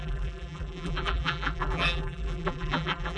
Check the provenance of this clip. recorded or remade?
remade